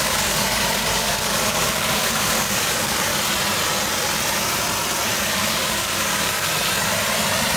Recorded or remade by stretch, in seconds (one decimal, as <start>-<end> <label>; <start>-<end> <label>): 0.0-3.1 remade; 3.1-5.2 recorded; 5.2-6.5 remade; 6.5-7.6 recorded